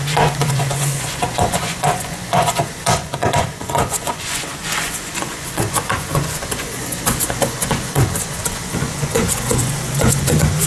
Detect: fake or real fake